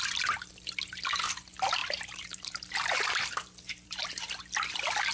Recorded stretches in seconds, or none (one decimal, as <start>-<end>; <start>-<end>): 0.0-1.8; 4.3-5.1

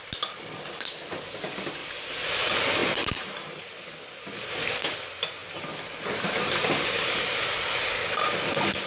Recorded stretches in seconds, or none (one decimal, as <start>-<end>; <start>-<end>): 0.0-1.8; 2.3-2.8; 3.7-5.4; 6.3-8.9

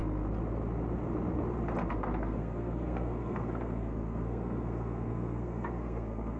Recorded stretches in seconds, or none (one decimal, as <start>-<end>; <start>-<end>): 0.0-1.9

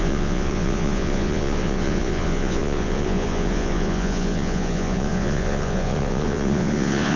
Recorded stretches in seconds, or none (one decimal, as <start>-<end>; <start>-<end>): none

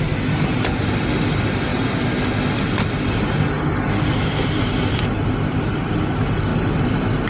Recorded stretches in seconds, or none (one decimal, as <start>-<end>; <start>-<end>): 0.0-6.5

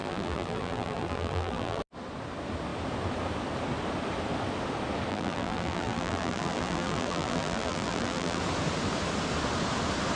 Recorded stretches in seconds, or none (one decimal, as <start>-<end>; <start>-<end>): 1.8-5.1; 8.4-10.2

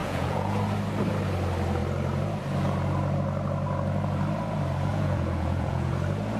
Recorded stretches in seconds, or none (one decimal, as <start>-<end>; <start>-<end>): 0.6-4.9; 5.9-6.4